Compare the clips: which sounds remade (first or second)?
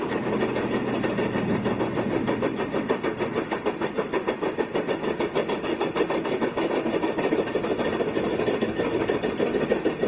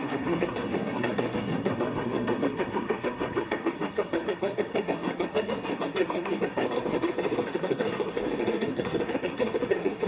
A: second